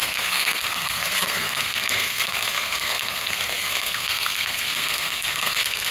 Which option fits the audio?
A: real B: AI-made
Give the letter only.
B